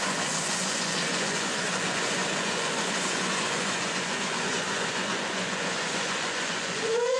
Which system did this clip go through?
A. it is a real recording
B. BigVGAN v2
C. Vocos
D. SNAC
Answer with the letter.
C